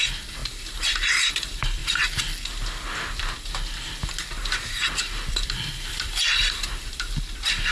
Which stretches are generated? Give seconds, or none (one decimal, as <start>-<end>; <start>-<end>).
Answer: 0.0-0.4; 1.3-1.8; 5.0-7.7